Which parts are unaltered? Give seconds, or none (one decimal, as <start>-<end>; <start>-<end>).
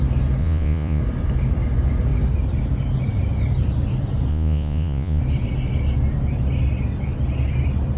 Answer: 0.0-0.4; 1.0-4.3; 5.2-8.0